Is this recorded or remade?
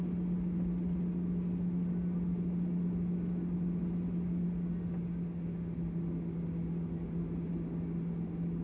recorded